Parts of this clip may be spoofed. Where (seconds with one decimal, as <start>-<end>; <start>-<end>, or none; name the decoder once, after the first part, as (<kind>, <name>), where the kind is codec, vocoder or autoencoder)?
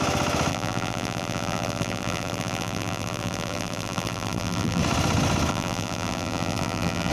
0.5-4.8 (vocoder, BigVGAN v2); 5.5-7.1